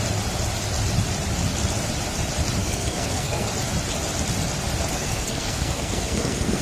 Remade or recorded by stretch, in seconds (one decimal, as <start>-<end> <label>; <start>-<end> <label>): 0.0-2.6 recorded; 2.6-3.5 remade; 3.5-4.9 recorded; 4.9-6.6 remade